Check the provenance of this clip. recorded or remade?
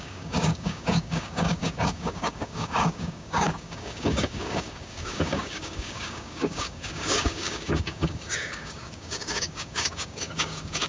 remade